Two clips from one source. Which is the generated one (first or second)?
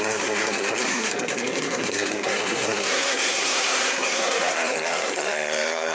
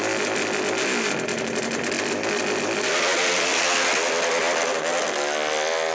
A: first